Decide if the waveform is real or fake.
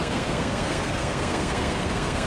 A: fake